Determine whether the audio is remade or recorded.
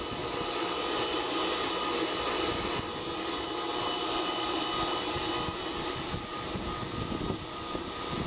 recorded